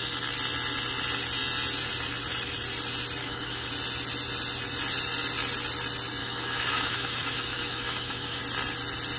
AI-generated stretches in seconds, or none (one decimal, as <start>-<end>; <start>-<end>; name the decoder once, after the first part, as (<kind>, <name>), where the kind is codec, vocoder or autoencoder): 3.2-3.7 (autoencoder, DAC-VAE); 6.2-8.4